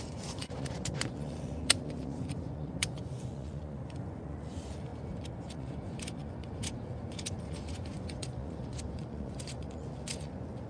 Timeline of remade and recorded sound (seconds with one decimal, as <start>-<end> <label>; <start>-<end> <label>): 0.0-10.7 remade